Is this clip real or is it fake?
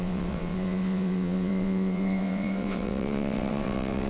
fake